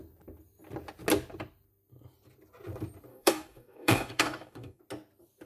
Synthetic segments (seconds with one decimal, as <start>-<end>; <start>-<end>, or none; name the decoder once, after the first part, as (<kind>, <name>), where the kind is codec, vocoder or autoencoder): 3.1-4.8 (codec, DAC)